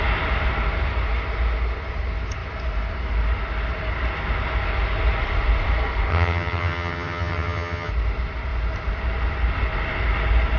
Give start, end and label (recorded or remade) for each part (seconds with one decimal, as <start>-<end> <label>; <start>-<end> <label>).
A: 0.0-6.1 recorded; 6.1-7.9 remade; 7.9-10.6 recorded